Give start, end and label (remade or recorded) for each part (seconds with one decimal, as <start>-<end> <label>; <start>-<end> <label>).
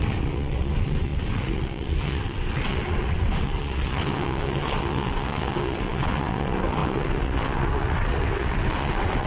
0.0-9.3 remade